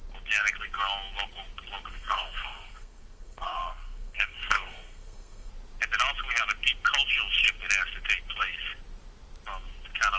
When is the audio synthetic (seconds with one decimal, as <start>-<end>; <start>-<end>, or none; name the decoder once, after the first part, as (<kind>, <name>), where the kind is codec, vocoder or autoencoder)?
1.9-5.5 (codec, SNAC)